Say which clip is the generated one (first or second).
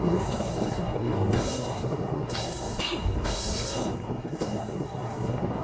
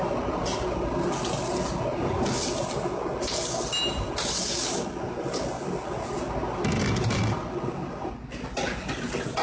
first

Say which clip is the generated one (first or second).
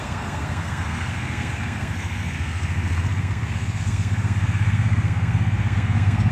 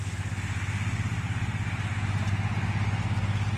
first